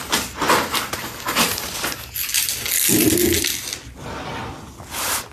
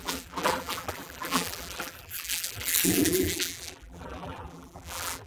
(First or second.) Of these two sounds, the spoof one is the second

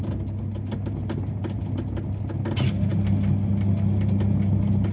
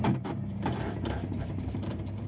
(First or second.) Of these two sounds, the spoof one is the second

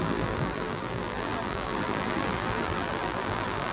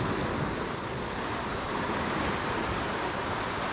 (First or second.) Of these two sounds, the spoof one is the first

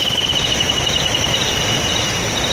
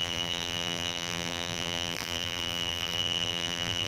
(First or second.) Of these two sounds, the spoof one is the second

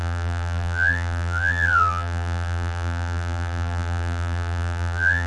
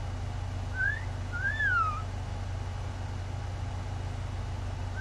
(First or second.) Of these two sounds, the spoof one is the first